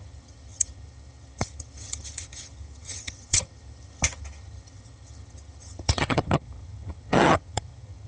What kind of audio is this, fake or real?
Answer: fake